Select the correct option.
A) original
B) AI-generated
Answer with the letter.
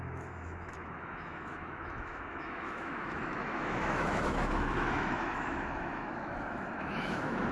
B